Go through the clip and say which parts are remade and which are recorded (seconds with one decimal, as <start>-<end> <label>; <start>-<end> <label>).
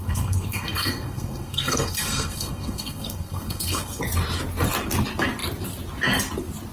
0.0-4.0 remade; 4.0-6.7 recorded